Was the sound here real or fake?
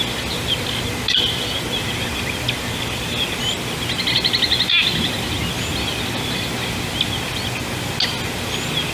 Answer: real